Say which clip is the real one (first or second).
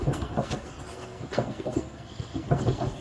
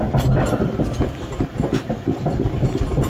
second